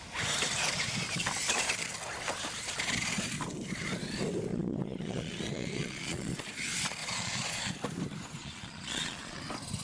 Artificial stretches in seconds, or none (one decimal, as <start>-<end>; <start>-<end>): 4.5-6.4; 7.0-7.7; 8.4-9.4